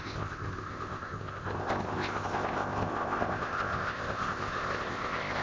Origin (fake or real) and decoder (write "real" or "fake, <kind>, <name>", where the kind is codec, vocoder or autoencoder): fake, codec, ZipCodec